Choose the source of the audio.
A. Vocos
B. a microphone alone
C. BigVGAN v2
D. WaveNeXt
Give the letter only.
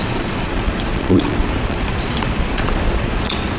A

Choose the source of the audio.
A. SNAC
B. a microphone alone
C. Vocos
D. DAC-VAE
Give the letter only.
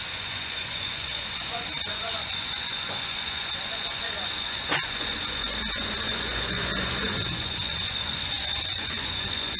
C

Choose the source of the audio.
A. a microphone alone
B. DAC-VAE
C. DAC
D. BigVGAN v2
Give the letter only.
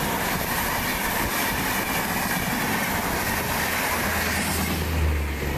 A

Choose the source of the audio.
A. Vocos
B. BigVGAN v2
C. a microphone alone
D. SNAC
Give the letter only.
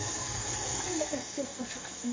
D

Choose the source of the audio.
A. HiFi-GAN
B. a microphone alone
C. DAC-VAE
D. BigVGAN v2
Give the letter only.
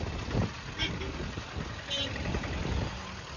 B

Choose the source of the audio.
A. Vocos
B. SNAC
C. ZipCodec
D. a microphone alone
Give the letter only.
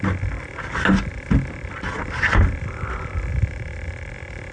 D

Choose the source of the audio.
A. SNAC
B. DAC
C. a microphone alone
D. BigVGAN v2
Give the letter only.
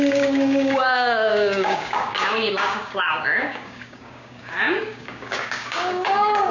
B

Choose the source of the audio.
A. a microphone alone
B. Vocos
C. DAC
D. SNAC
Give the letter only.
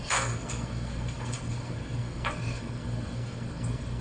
D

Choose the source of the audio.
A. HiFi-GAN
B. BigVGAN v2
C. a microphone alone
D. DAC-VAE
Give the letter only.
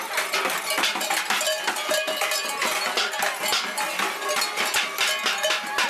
C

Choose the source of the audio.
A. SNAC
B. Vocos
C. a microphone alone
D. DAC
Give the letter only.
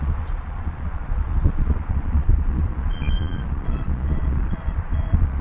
B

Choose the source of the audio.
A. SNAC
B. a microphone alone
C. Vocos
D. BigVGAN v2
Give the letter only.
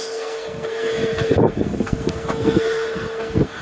A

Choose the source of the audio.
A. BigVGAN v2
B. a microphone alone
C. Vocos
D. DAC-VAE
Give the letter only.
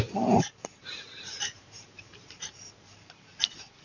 A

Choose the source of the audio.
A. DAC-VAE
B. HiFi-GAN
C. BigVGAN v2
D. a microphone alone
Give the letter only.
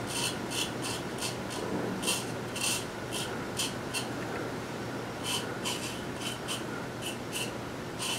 D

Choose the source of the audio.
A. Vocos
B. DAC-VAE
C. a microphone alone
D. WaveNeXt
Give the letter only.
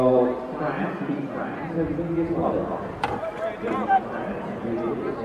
C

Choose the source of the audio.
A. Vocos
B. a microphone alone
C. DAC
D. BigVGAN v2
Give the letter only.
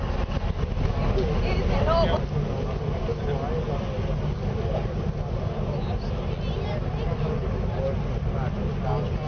B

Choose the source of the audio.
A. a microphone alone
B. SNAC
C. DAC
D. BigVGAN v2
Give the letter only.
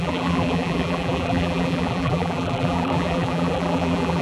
D